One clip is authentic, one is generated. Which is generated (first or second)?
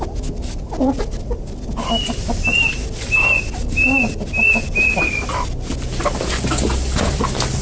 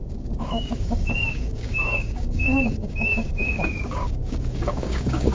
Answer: second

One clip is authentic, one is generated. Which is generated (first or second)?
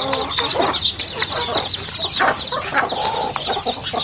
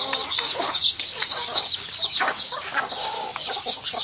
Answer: second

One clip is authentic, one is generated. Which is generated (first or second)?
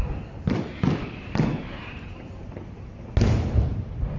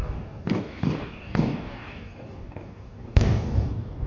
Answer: second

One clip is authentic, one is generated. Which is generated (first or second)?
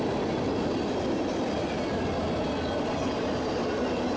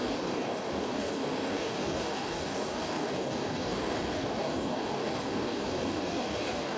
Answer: second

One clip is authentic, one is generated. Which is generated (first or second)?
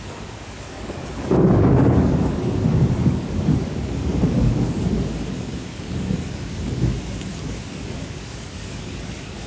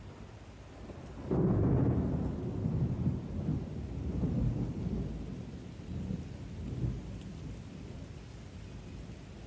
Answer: first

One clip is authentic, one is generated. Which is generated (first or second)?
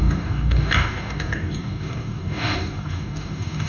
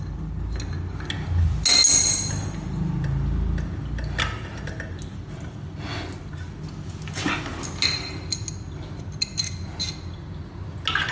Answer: first